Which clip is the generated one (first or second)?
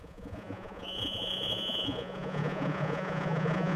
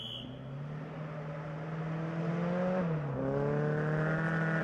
first